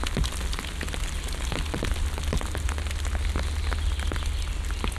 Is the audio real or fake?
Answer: real